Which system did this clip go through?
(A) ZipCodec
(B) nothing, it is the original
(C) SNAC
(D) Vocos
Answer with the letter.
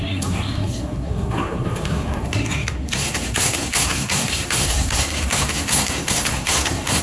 C